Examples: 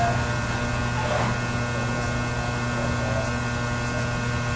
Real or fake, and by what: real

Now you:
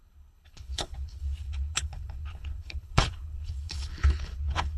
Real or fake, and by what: fake, codec, HILCodec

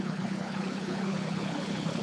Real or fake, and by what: fake, codec, HILCodec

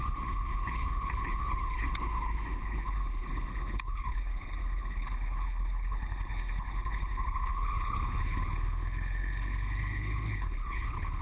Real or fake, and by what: fake, codec, HILCodec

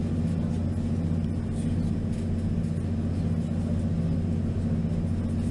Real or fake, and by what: real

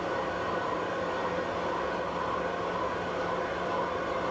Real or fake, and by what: real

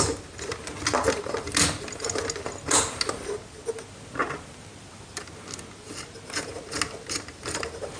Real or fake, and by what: real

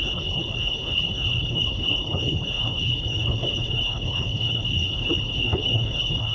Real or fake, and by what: fake, codec, HILCodec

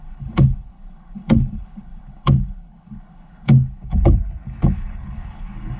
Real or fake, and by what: fake, codec, HILCodec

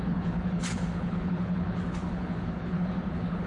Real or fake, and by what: fake, codec, HILCodec